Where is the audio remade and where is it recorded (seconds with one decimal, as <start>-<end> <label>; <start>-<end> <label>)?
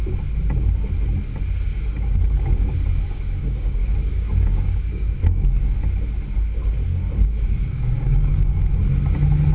0.0-1.7 recorded; 1.7-5.7 remade; 5.7-6.9 recorded; 6.9-8.5 remade; 8.5-9.5 recorded